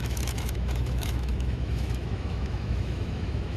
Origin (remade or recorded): remade